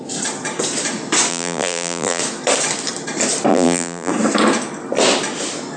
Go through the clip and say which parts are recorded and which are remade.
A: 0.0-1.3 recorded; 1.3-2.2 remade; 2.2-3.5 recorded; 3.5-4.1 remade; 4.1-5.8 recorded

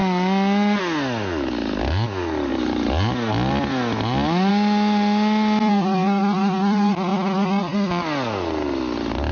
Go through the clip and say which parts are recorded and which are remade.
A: 0.0-9.3 recorded

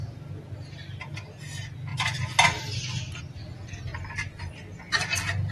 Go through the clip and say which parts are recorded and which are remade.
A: 0.0-5.5 recorded

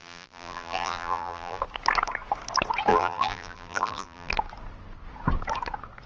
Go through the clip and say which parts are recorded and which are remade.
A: 0.0-1.6 remade; 1.6-2.9 recorded; 2.9-4.3 remade; 4.3-6.1 recorded

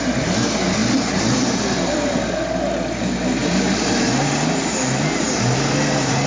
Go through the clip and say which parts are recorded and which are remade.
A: 0.0-3.4 recorded; 3.4-6.3 remade

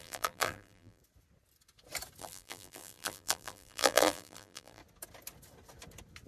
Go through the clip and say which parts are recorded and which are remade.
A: 0.0-1.0 remade; 1.0-2.2 recorded; 2.2-4.8 remade; 4.8-6.3 recorded

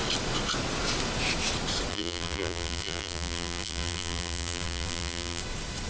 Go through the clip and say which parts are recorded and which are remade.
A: 0.0-1.9 recorded; 1.9-5.4 remade; 5.4-5.9 recorded